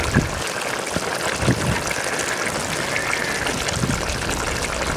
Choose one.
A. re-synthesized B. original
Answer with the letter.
B